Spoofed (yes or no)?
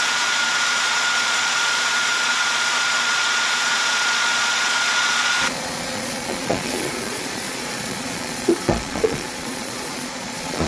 yes